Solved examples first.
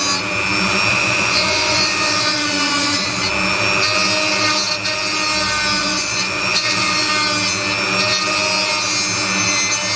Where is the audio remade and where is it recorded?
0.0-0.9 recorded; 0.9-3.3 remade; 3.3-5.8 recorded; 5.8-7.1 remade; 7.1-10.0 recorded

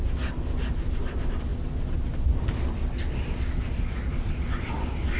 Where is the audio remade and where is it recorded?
0.0-5.2 recorded